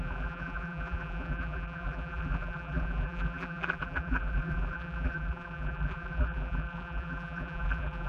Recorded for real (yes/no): no